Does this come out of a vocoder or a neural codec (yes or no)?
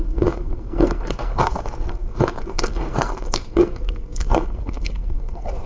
yes